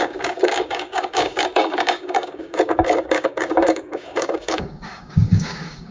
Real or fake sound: fake